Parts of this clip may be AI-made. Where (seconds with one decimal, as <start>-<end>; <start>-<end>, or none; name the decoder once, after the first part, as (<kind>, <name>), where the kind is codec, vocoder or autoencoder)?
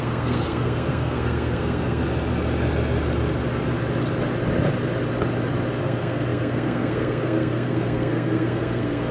0.0-2.0 (codec, SNAC); 5.8-9.1